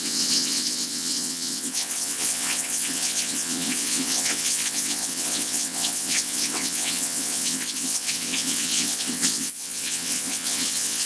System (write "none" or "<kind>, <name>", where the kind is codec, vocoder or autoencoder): vocoder, WaveNeXt